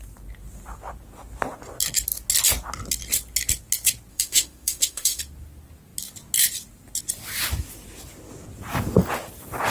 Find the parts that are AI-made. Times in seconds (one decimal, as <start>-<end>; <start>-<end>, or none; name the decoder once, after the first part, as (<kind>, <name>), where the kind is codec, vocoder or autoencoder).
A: 4.1-5.2 (autoencoder, DAC-VAE)